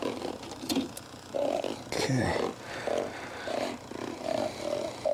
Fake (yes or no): no